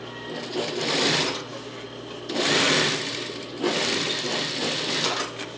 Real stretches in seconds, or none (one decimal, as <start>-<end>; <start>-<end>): 0.0-5.6